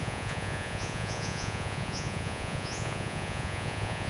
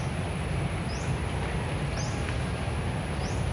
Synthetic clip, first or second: first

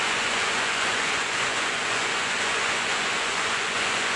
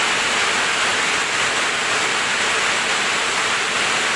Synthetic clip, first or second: first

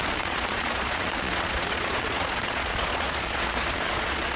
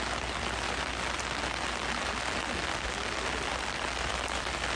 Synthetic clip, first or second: first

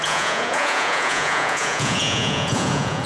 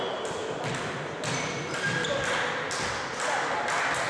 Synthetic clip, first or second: first